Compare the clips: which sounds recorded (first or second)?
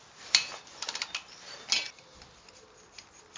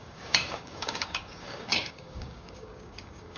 first